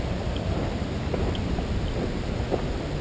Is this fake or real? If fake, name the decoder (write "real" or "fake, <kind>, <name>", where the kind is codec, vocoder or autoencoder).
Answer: real